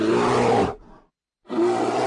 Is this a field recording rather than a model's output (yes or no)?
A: yes